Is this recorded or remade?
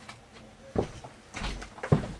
recorded